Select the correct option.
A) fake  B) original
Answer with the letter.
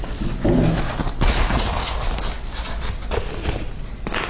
B